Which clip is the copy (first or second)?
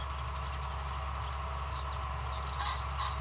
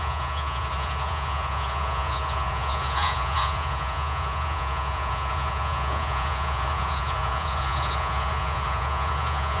second